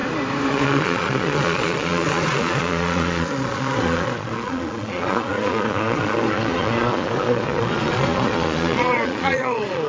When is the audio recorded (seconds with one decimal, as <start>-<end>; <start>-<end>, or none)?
0.0-0.5